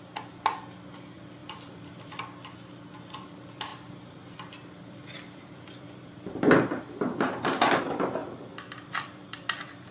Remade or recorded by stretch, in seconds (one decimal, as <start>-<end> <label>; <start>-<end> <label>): 0.0-1.4 recorded; 1.4-2.2 remade; 2.2-3.7 recorded; 3.7-7.8 remade; 7.8-8.2 recorded; 8.2-9.9 remade